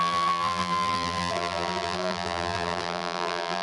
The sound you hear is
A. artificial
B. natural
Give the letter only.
A